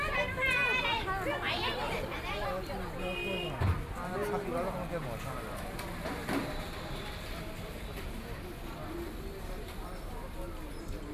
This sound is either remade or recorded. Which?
recorded